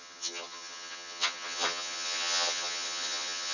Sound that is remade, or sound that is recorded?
remade